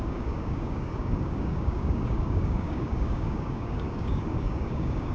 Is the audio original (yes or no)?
no